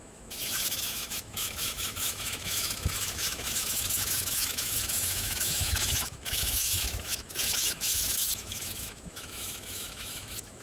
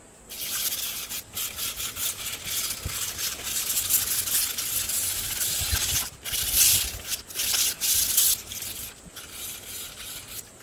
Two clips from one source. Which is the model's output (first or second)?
first